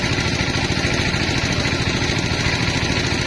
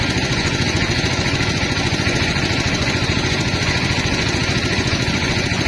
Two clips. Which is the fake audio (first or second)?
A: second